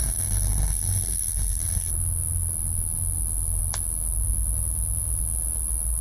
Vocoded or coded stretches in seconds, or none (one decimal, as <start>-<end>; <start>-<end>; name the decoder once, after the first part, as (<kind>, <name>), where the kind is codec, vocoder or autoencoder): 0.0-1.9 (codec, SNAC)